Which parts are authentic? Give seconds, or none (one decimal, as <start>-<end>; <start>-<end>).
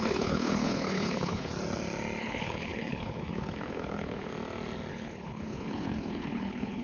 1.5-2.2; 4.3-4.9